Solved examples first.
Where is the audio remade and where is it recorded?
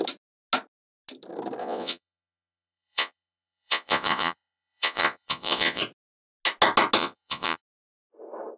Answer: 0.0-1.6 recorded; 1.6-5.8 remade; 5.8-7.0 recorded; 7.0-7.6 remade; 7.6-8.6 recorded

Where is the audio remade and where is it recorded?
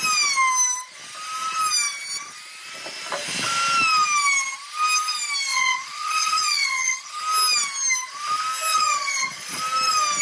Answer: 0.0-5.5 recorded; 5.5-7.1 remade; 7.1-8.7 recorded; 8.7-9.6 remade; 9.6-10.2 recorded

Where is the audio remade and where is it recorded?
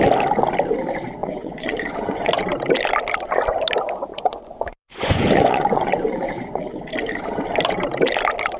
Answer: 0.0-1.2 recorded; 1.2-2.3 remade; 2.3-4.1 recorded; 4.1-6.6 remade; 6.6-8.6 recorded